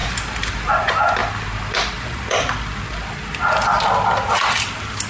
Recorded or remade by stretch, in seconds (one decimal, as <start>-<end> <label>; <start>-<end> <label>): 0.0-5.1 recorded